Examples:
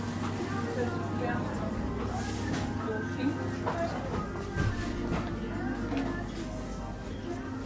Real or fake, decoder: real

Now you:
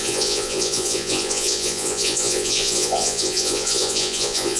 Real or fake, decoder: fake, vocoder, Vocos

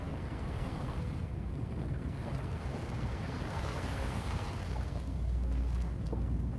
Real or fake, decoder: fake, codec, SNAC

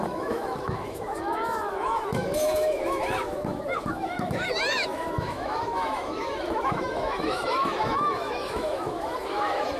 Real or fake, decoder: fake, autoencoder, DAC-VAE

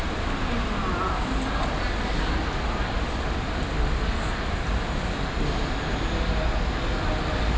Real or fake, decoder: real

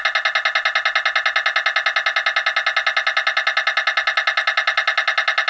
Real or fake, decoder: real